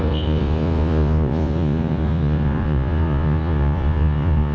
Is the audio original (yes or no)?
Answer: no